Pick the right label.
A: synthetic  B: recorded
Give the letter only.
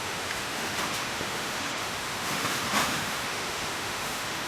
A